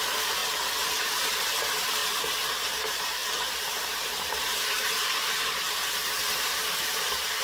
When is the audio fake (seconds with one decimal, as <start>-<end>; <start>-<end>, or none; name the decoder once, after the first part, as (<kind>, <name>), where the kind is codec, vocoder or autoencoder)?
0.0-0.4 (vocoder, BigVGAN v2); 1.1-2.0; 2.6-7.4